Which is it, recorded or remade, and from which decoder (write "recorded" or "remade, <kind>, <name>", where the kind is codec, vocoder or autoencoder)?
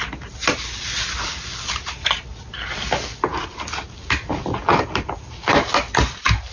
recorded